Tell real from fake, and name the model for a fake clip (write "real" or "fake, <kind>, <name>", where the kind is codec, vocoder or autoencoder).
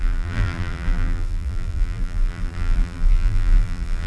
fake, vocoder, BigVGAN v2